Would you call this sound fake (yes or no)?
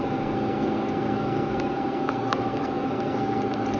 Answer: yes